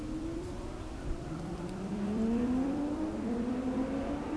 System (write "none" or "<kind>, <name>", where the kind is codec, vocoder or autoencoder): vocoder, BigVGAN v2